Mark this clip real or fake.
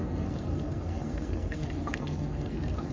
fake